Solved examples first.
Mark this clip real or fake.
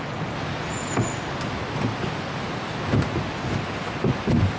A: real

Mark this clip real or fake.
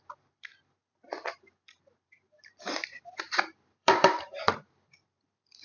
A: fake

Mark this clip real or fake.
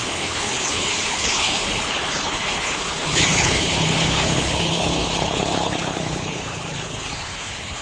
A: fake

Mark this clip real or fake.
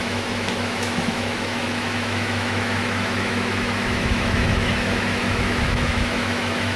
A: fake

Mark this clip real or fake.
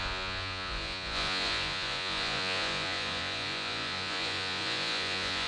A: fake